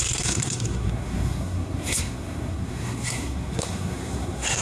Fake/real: fake